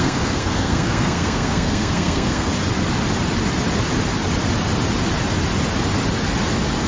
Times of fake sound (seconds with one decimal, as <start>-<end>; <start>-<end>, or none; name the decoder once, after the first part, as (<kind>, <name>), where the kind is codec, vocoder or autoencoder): 0.0-2.5 (codec, SNAC)